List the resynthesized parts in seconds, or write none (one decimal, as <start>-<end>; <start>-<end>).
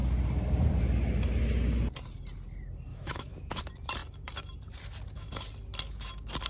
2.9-3.6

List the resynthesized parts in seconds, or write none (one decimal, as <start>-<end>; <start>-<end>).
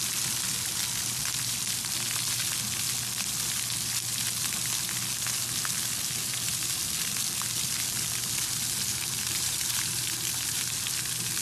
8.9-10.0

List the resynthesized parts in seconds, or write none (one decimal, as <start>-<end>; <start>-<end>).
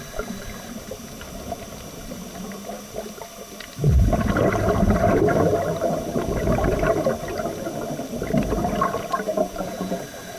9.3-10.0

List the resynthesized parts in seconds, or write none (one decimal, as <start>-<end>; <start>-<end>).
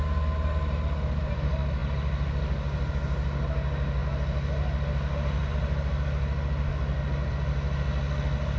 none